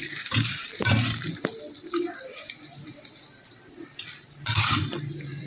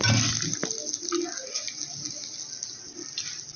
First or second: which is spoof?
first